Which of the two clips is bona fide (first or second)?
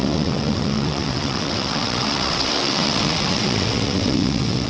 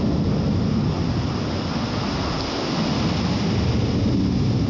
second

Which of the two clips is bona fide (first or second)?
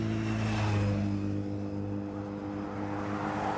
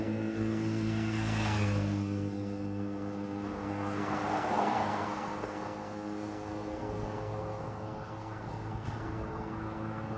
first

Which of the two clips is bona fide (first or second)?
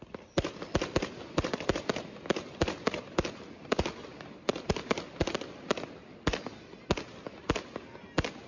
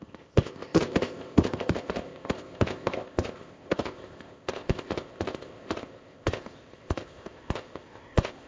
first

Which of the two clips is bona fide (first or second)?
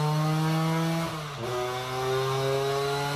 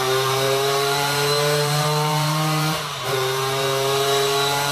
first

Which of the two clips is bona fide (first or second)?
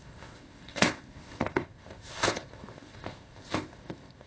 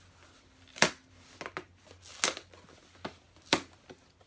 second